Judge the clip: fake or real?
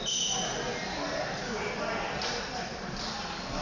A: real